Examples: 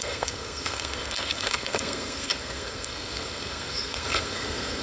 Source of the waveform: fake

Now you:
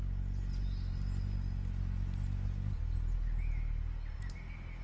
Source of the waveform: real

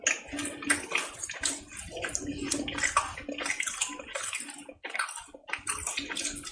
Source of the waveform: real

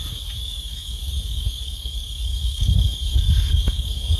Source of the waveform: fake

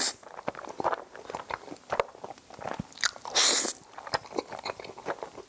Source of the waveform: real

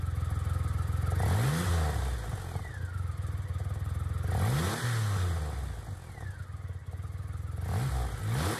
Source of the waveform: real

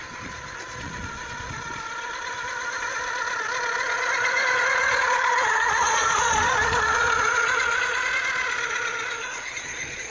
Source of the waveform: fake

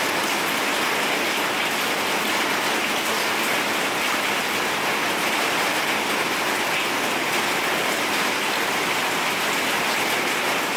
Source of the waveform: real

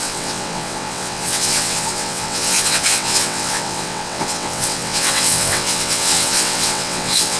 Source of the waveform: fake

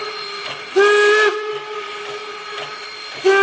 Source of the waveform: real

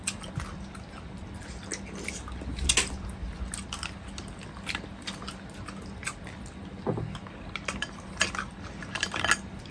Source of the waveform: real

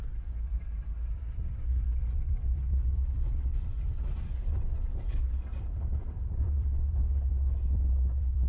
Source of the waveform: fake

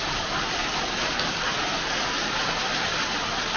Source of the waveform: fake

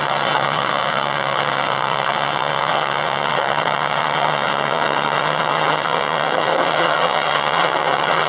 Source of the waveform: fake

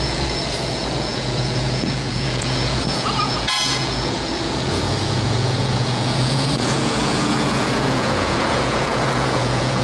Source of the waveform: fake